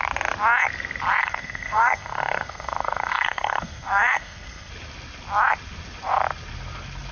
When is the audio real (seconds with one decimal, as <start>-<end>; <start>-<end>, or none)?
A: 0.0-1.2; 4.7-7.1